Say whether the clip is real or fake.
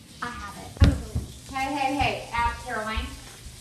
real